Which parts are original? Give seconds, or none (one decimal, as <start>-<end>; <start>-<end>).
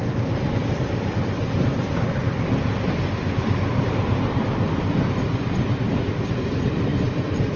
none